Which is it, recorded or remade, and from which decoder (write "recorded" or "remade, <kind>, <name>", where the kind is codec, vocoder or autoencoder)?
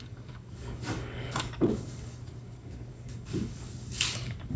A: remade, codec, DAC